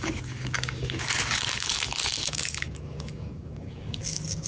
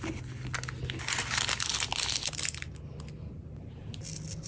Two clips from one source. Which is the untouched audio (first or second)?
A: second